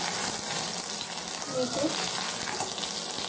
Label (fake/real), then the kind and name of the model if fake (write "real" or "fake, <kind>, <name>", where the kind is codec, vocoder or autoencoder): real